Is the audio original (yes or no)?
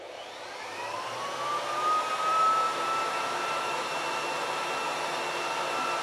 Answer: no